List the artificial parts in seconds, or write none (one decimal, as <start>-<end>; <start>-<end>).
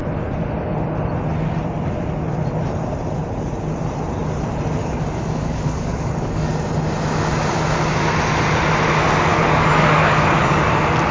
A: 4.8-6.5; 9.3-10.7